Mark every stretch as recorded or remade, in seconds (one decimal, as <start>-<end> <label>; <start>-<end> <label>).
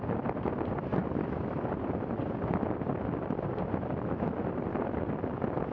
0.0-5.7 recorded